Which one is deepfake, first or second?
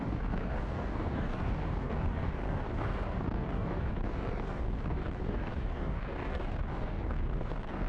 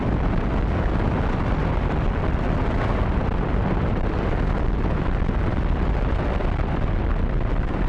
first